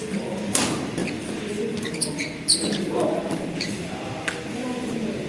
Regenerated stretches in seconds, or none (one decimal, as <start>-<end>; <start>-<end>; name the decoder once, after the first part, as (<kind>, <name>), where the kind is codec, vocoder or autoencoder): none